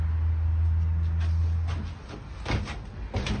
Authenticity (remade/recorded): recorded